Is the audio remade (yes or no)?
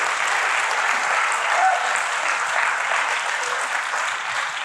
no